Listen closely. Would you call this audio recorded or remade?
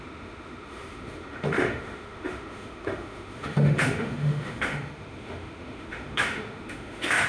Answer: remade